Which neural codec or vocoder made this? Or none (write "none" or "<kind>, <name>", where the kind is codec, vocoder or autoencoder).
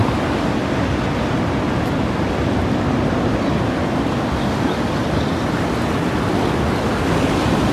none